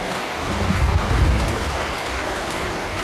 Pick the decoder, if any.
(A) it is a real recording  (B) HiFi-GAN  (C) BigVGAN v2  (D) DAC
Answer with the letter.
D